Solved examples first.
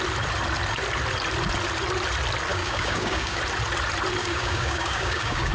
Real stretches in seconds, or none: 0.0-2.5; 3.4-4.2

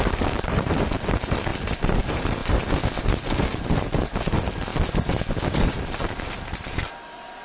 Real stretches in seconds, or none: 1.5-2.0; 2.4-3.0; 4.7-5.5

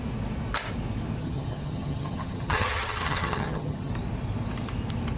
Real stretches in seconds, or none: 0.0-1.2; 3.9-5.2

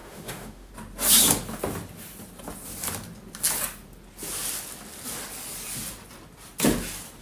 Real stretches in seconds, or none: 0.7-7.2

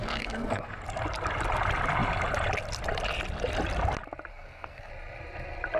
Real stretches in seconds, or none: 0.8-4.3; 4.9-5.8